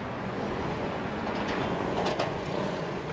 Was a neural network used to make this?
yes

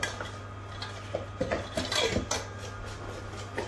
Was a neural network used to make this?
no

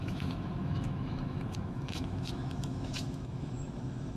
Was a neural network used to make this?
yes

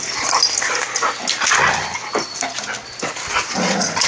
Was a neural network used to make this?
no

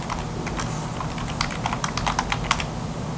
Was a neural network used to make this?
no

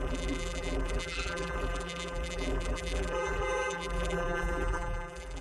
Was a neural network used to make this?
yes